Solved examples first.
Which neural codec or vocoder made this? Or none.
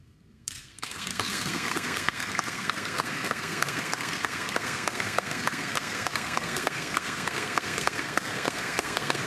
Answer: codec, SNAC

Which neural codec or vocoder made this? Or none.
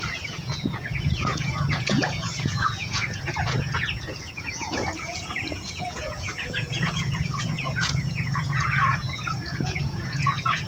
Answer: vocoder, Vocos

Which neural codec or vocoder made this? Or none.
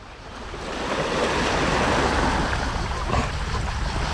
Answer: none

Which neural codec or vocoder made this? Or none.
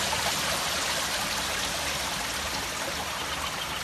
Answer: none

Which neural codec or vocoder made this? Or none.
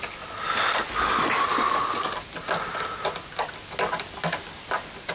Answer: none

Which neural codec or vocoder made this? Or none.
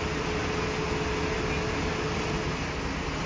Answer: none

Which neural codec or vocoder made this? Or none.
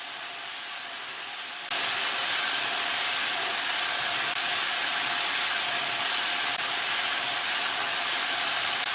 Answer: none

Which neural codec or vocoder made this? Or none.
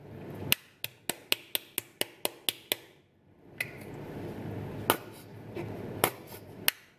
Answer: none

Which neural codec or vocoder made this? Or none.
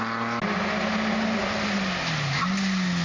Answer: none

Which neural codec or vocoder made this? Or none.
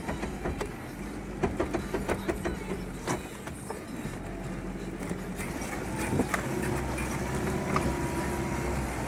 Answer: none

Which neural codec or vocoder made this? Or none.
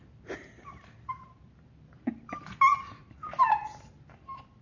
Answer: none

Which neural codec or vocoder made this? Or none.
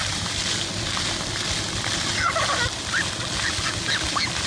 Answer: none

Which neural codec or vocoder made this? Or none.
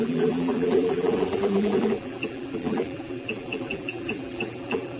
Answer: vocoder, BigVGAN v2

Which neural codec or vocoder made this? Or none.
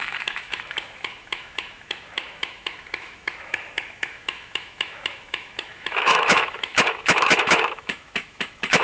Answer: autoencoder, DAC-VAE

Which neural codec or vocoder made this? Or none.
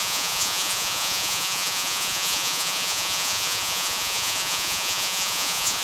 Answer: vocoder, Vocos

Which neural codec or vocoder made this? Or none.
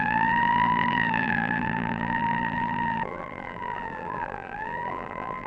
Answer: vocoder, BigVGAN v2